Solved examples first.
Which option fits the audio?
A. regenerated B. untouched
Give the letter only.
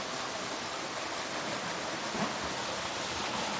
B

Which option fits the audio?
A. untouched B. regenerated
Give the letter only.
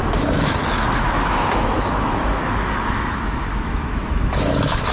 B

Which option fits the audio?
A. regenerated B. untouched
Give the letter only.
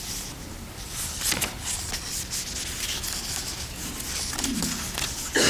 B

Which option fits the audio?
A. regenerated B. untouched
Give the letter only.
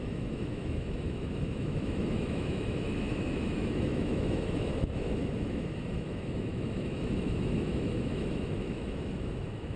A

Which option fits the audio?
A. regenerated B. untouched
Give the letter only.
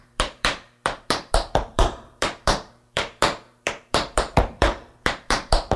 A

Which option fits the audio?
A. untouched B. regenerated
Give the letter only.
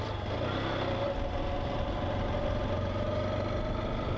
A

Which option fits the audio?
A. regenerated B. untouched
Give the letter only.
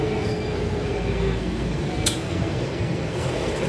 A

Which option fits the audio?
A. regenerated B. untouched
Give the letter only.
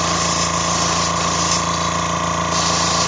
B